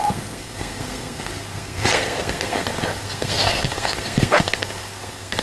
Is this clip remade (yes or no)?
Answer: yes